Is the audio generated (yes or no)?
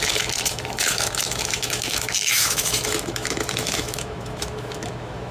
yes